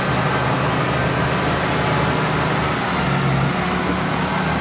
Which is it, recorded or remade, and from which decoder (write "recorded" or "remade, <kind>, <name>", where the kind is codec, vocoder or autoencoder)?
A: recorded